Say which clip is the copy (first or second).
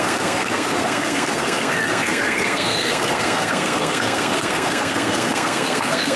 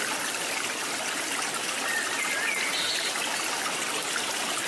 first